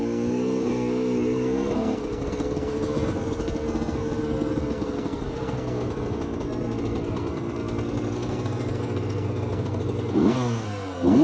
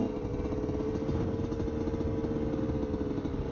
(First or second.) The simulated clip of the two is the first